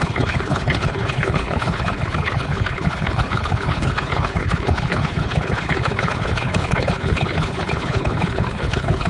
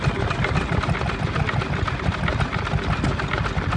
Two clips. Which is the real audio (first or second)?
second